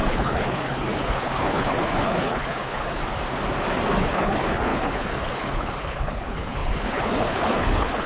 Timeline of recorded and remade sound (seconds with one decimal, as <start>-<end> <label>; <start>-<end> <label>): 0.0-2.9 remade; 2.9-4.0 recorded; 4.0-8.1 remade